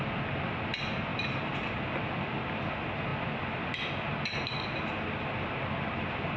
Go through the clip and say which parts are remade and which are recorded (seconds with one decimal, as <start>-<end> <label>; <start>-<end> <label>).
0.0-6.4 recorded